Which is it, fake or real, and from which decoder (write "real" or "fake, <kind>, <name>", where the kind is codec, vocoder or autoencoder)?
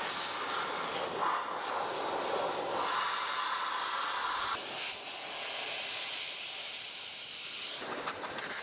real